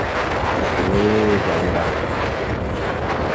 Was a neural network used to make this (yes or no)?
no